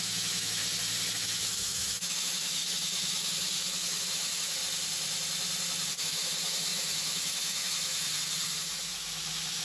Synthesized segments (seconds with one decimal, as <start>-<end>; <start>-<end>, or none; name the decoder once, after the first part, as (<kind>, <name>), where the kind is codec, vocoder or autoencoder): 0.0-0.6 (autoencoder, DAC-VAE); 1.1-4.6; 5.9-9.6